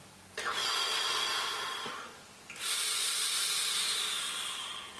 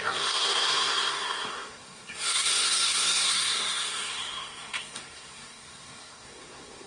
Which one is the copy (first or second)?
second